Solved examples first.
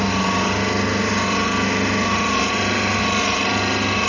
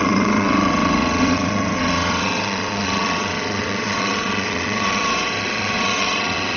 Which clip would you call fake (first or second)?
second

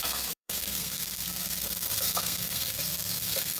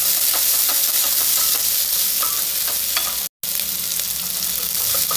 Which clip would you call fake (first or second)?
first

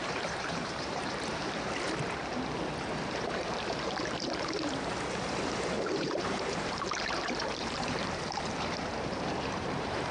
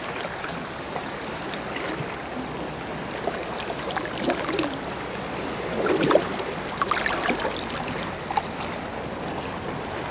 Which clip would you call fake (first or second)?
first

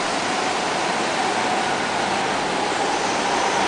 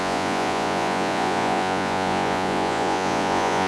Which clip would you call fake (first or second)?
second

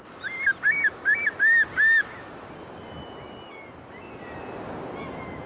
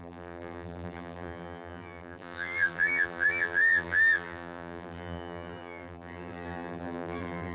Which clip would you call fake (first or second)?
second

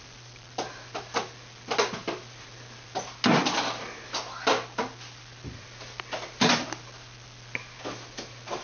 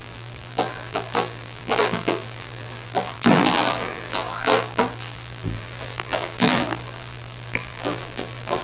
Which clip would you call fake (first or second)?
second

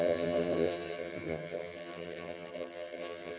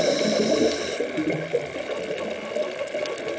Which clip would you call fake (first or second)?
first